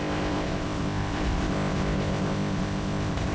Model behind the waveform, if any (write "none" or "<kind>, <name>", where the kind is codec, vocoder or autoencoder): codec, ZipCodec